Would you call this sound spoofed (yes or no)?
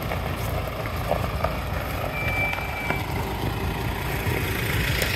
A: no